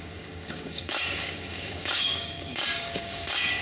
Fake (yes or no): yes